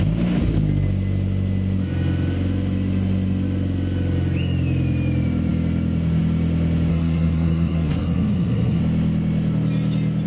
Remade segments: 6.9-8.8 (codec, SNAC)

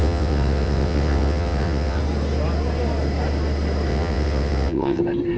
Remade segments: 0.0-2.0 (vocoder, WaveNeXt); 3.9-5.0

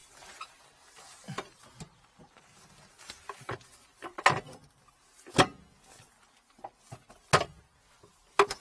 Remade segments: none

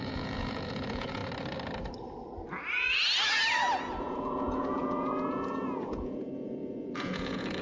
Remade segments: 0.0-1.2 (vocoder, Vocos); 4.0-7.6

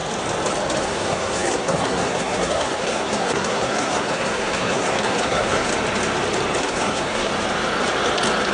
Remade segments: 0.8-5.7 (codec, SNAC); 6.6-7.3

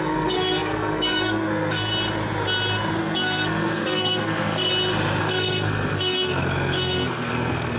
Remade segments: 0.0-1.9 (codec, SNAC); 3.0-4.7; 5.2-7.8

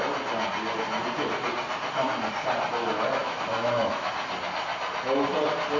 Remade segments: 3.2-4.1 (autoencoder, DAC-VAE)

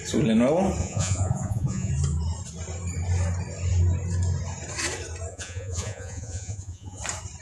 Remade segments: 0.8-1.9 (vocoder, Vocos); 5.3-7.0